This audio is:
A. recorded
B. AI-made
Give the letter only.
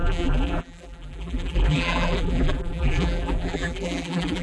B